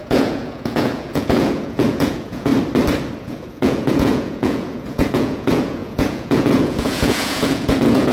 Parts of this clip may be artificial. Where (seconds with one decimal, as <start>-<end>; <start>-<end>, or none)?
0.0-2.5; 3.2-8.1